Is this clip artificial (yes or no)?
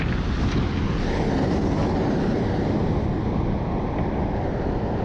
no